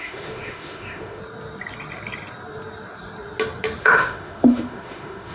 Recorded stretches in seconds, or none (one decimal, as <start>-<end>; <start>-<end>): 1.2-3.8